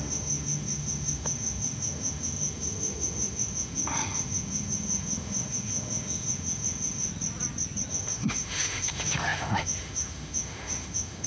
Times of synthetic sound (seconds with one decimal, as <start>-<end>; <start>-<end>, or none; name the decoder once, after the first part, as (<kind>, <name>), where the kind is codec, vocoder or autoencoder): 0.0-7.1 (autoencoder, DAC-VAE); 7.9-11.3